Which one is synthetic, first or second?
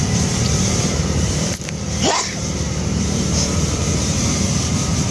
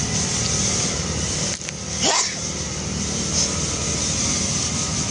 first